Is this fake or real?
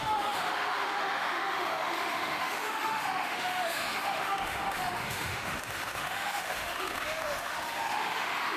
fake